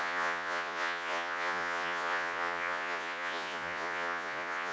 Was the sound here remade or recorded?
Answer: remade